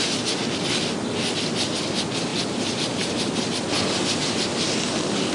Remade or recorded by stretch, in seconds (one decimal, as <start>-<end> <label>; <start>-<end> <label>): 0.0-5.3 recorded